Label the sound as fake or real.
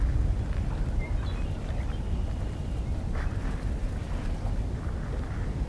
real